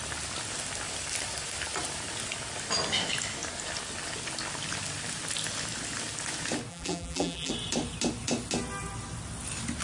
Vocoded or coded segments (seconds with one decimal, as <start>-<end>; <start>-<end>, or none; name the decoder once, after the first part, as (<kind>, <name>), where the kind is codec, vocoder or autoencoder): 6.7-7.5 (vocoder, BigVGAN v2)